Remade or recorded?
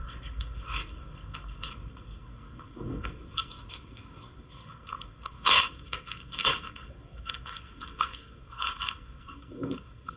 remade